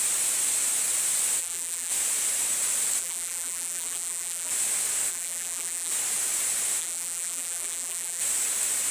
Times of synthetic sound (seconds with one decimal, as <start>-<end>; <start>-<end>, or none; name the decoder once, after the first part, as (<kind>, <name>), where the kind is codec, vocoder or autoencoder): 1.4-1.9 (vocoder, BigVGAN v2); 3.0-4.5; 5.1-5.9; 6.8-8.2